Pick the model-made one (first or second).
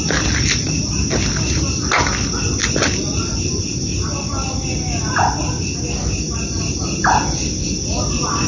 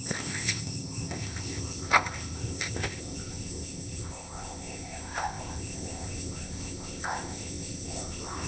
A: second